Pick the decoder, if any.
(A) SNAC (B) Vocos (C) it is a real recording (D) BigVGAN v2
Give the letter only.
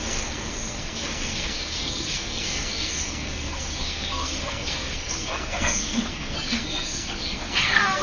A